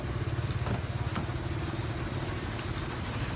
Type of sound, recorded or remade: recorded